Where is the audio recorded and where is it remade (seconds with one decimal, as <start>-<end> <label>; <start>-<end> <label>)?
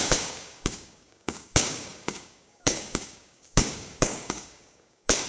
0.0-5.3 remade